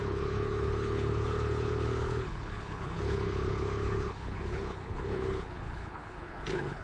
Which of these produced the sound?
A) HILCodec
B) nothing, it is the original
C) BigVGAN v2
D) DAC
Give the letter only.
A